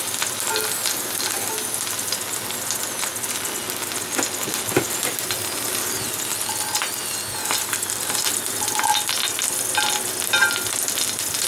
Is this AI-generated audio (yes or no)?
no